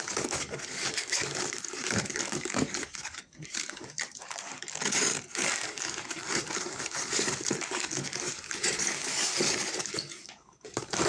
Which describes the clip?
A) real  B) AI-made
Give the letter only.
B